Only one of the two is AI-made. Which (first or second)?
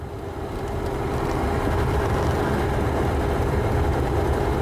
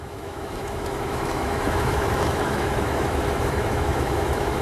second